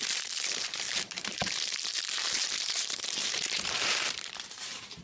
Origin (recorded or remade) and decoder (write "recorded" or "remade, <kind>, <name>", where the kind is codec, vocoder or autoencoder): remade, vocoder, BigVGAN v2